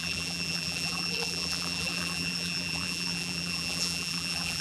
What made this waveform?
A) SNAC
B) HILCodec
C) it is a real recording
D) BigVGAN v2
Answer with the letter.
D